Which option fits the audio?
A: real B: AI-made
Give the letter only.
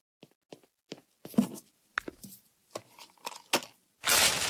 A